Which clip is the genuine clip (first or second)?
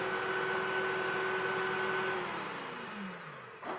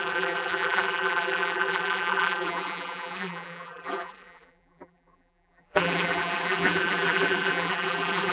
first